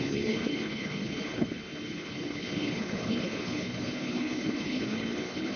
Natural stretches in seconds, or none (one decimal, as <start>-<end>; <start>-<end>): none